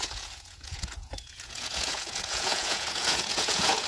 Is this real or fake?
fake